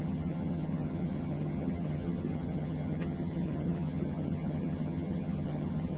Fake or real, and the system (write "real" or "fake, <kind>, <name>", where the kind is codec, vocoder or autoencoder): fake, vocoder, HiFi-GAN